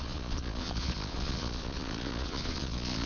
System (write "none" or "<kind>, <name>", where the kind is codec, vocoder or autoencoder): vocoder, Vocos